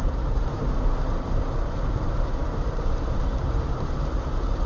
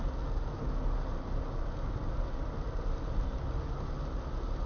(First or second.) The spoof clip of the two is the first